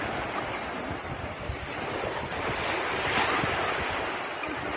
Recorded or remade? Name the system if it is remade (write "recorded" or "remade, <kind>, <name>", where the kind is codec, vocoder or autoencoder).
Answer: recorded